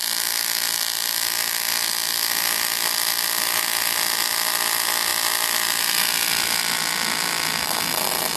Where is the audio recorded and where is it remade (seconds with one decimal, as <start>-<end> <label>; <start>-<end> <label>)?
0.0-8.4 recorded